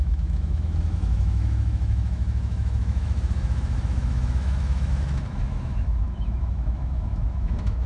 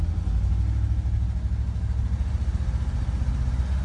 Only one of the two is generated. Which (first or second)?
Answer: first